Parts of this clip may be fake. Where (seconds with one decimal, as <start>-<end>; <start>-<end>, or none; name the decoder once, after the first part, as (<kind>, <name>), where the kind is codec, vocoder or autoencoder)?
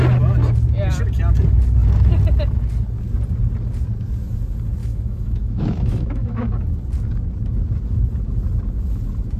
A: 4.8-6.5 (autoencoder, DAC-VAE)